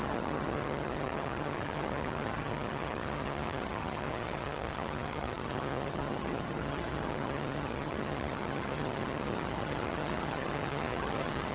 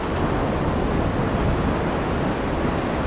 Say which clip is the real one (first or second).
second